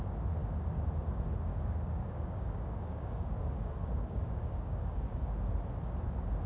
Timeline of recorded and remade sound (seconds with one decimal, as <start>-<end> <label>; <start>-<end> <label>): 0.0-1.5 recorded; 1.5-5.3 remade; 5.3-6.5 recorded